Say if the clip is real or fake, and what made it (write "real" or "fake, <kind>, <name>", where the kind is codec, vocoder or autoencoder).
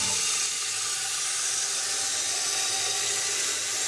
real